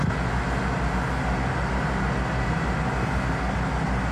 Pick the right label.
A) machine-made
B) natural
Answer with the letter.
B